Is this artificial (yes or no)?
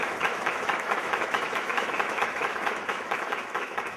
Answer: yes